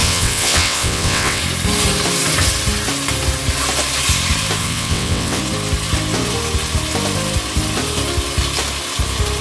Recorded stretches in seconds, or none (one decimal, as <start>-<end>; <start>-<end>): 1.4-4.6; 5.4-9.4